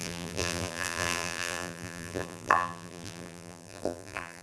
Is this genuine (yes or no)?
no